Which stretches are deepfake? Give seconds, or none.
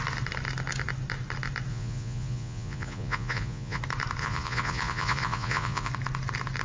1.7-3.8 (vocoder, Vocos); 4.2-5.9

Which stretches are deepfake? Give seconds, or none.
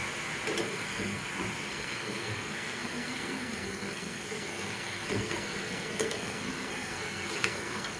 0.6-1.2 (codec, SNAC); 1.7-8.0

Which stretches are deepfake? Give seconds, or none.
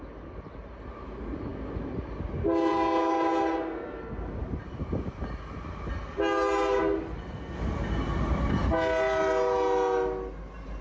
none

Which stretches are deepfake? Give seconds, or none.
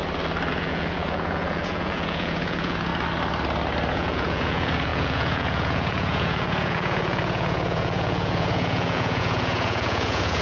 0.5-2.9 (vocoder, Vocos); 3.9-10.4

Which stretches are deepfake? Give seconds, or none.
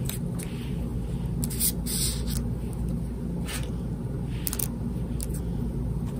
none